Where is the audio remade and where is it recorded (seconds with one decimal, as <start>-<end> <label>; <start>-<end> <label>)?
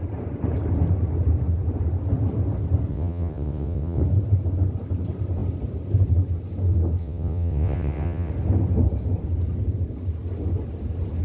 0.0-2.9 recorded; 2.9-4.0 remade; 4.0-7.0 recorded; 7.0-8.3 remade; 8.3-11.2 recorded